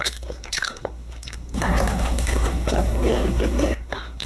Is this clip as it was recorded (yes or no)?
no